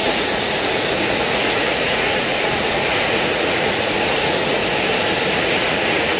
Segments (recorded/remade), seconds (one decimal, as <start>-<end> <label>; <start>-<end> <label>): 0.0-4.6 remade; 4.6-5.3 recorded; 5.3-6.2 remade